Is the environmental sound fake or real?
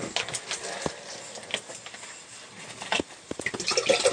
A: real